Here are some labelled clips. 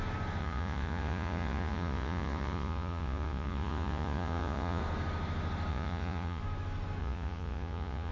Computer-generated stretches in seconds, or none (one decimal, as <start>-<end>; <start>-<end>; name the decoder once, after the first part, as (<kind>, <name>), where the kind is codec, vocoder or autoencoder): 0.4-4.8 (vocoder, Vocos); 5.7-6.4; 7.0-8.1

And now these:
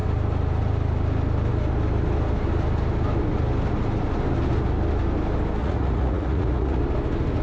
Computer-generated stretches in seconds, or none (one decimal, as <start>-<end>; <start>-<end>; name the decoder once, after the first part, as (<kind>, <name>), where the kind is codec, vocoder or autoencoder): 5.6-6.8 (vocoder, Vocos)

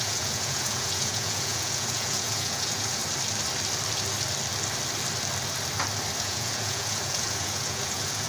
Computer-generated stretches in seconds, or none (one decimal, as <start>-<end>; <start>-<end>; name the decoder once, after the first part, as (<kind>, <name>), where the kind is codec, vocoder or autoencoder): 0.0-3.0 (vocoder, Vocos); 6.2-8.3